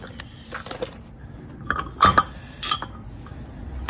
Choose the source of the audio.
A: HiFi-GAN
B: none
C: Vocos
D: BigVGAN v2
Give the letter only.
B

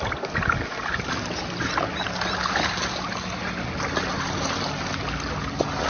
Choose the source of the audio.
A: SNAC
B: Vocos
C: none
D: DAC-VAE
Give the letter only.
C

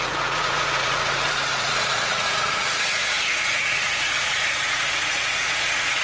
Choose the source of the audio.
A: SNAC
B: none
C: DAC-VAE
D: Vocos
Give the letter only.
D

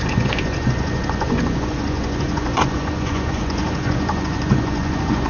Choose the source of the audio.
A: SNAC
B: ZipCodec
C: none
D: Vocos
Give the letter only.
D